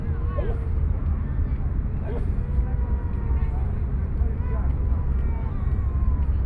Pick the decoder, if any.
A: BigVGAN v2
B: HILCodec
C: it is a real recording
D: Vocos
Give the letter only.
C